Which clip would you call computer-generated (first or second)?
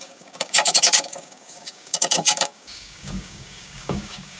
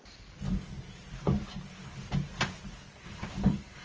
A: first